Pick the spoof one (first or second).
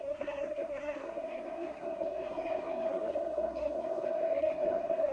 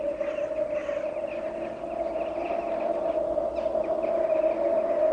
first